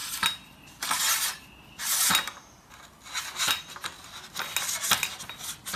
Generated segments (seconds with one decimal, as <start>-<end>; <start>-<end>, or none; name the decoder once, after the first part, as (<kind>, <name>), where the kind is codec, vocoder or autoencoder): none